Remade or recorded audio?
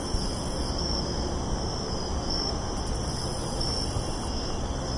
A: recorded